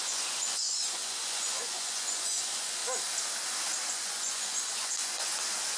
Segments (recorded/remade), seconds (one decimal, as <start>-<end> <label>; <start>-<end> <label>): 0.0-2.8 remade; 2.8-3.9 recorded; 3.9-5.8 remade